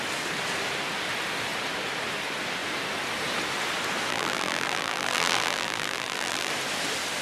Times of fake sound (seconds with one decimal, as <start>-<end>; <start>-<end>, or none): 4.1-6.5